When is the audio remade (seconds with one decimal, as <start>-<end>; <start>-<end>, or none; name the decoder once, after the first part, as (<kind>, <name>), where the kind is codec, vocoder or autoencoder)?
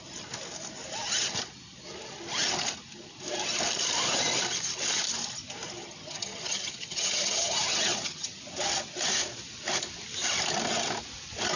5.8-8.4 (vocoder, HiFi-GAN)